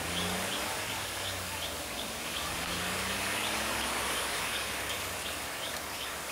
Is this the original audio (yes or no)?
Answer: no